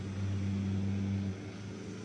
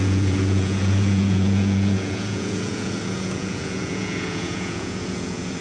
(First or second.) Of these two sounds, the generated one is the second